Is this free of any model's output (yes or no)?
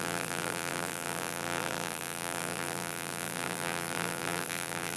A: no